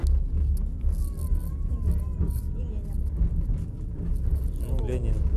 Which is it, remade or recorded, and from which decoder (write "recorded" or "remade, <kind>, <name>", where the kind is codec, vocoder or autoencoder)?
recorded